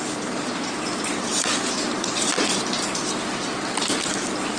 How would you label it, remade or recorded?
recorded